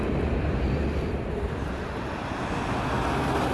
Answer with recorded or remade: recorded